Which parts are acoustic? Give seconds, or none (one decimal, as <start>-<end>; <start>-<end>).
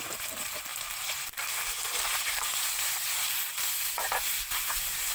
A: 0.0-5.1